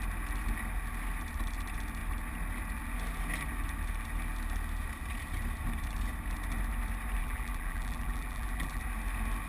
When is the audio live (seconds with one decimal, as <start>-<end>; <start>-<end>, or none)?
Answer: 0.0-7.2; 8.8-9.5